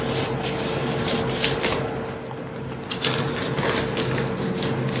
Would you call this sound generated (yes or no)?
no